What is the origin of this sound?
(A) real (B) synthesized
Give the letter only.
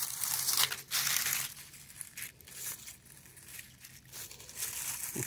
A